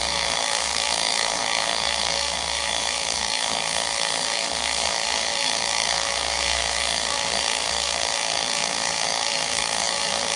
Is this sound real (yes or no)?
no